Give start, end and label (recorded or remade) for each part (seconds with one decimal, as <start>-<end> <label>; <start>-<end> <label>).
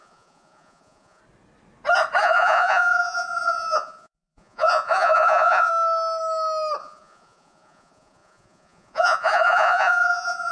0.0-1.2 remade; 1.2-2.2 recorded; 2.2-5.7 remade; 5.7-6.8 recorded; 6.8-10.5 remade